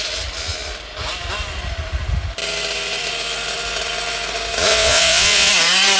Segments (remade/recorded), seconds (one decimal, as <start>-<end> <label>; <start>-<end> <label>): 0.0-4.7 recorded; 4.7-5.5 remade; 5.5-6.0 recorded